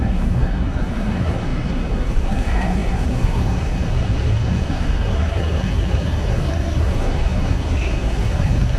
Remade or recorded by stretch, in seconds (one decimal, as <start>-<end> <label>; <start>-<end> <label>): 0.0-8.8 remade